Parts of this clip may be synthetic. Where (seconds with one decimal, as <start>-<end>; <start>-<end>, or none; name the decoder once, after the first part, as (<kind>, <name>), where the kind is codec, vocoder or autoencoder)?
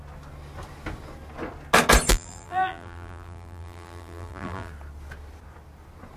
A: 2.1-4.7 (vocoder, BigVGAN v2)